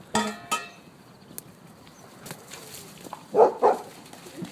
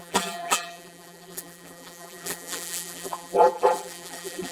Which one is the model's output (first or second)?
second